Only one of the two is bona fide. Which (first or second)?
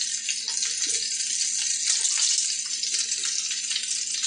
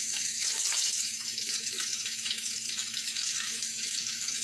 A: first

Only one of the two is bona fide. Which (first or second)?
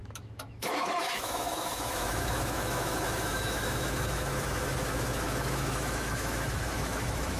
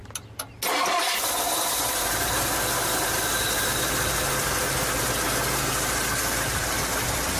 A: second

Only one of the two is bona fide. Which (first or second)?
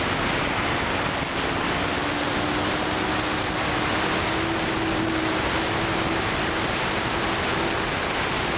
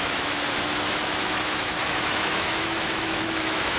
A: first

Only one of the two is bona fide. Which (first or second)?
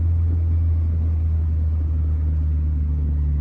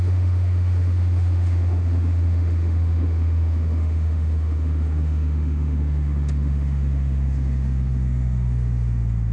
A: first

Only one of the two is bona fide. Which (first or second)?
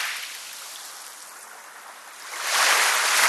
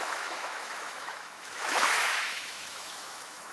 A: first